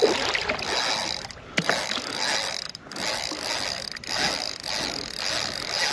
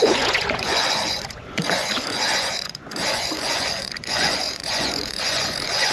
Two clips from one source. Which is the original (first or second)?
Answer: first